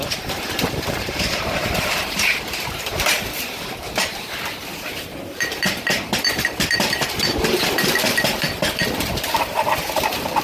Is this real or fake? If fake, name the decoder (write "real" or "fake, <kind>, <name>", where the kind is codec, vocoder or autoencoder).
fake, vocoder, BigVGAN v2